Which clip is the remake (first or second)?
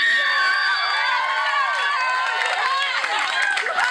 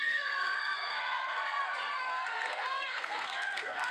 second